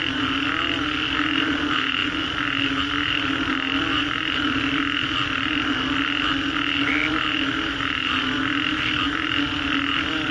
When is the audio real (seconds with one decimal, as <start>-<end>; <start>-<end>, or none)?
0.0-3.5; 4.8-10.3